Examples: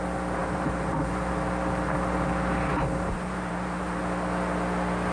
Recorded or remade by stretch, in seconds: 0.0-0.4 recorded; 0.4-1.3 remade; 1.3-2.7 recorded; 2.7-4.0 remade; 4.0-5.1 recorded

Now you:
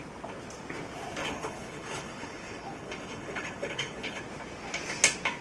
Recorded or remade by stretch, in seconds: 0.0-1.2 recorded; 1.2-4.2 remade; 4.2-5.4 recorded

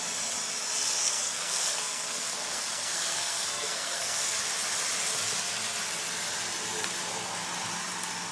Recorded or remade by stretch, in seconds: 0.0-1.0 recorded; 1.0-4.4 remade; 4.4-8.3 recorded

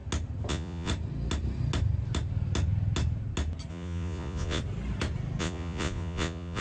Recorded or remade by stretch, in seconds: 0.0-0.5 recorded; 0.5-0.9 remade; 0.9-3.7 recorded; 3.7-4.6 remade; 4.6-5.4 recorded; 5.4-6.6 remade

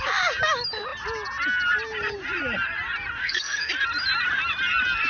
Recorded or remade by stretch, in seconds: 0.0-3.2 recorded; 3.2-3.7 remade; 3.7-5.1 recorded

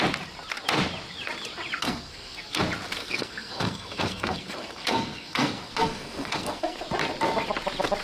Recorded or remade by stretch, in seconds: 0.0-1.8 recorded; 1.8-2.6 remade; 2.6-3.0 recorded; 3.0-6.8 remade; 6.8-8.0 recorded